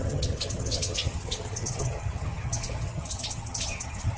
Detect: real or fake fake